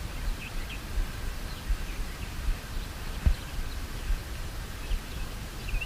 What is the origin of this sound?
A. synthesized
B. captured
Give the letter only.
B